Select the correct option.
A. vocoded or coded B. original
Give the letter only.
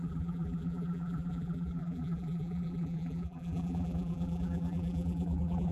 A